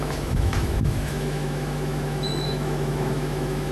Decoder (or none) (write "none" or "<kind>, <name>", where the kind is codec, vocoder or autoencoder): autoencoder, DAC-VAE